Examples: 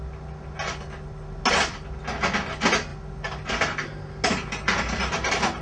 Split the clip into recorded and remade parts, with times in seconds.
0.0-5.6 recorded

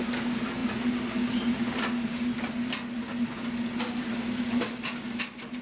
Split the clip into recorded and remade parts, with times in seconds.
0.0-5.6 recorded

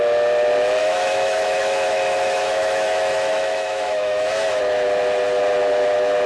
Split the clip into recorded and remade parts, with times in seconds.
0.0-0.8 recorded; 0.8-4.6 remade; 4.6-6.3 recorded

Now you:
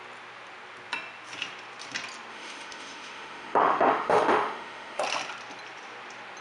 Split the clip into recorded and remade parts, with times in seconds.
0.0-2.3 recorded; 2.3-5.0 remade; 5.0-6.4 recorded